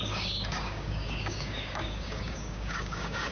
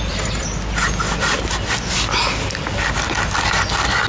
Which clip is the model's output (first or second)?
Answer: first